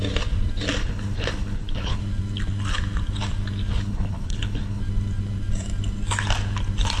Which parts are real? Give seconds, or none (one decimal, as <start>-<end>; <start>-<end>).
0.0-0.8; 2.0-3.7; 4.8-7.0